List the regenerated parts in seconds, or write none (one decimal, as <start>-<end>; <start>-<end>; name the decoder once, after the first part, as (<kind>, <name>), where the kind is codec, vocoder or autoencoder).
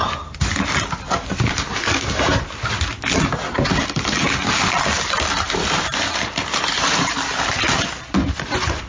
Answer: none